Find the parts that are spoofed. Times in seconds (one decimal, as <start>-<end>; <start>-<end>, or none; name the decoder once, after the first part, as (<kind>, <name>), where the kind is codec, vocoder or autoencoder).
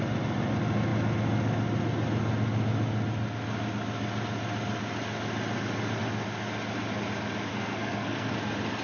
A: 7.5-8.3 (codec, SNAC)